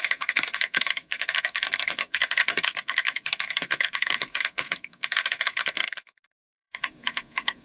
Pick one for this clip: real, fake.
fake